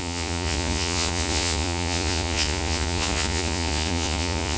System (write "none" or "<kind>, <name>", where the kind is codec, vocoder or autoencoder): vocoder, Vocos